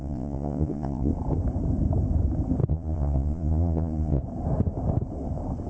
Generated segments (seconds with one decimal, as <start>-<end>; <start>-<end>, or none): 0.0-1.1; 2.7-4.2